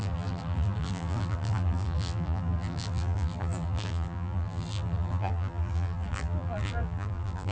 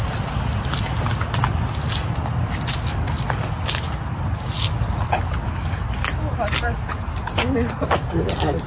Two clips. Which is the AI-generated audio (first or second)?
first